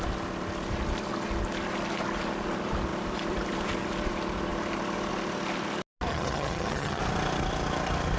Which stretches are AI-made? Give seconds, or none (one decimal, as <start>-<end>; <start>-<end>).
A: 6.1-7.0